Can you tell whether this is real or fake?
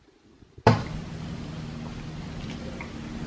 fake